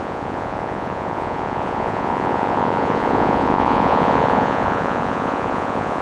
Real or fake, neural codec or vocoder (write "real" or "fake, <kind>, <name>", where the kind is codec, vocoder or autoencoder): fake, vocoder, Vocos